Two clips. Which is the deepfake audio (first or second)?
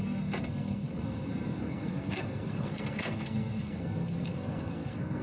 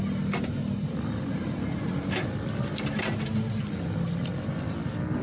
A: first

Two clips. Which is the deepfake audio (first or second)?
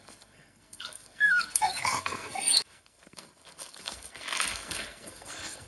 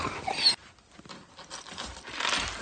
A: first